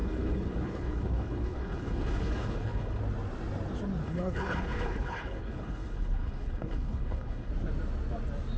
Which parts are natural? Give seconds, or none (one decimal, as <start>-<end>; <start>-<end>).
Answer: 3.0-4.0; 7.5-8.6